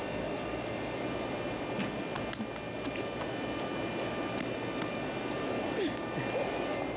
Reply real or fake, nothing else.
real